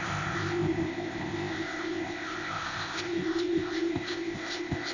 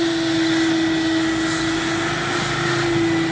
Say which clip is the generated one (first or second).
first